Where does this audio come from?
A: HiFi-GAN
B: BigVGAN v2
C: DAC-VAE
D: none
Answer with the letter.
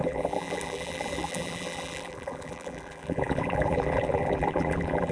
B